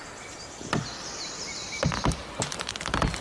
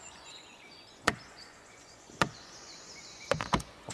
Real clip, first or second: first